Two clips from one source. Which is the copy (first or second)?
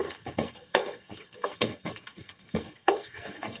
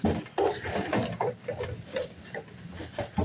first